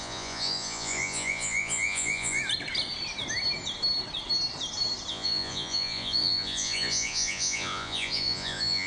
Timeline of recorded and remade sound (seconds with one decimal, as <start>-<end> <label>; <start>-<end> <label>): 0.0-2.4 remade; 2.4-5.1 recorded; 5.1-8.9 remade